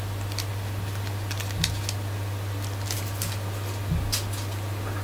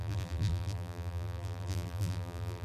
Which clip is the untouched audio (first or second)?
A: first